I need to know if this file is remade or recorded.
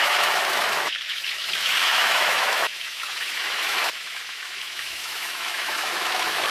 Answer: remade